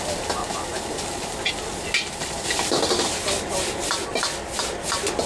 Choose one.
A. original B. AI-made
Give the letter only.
A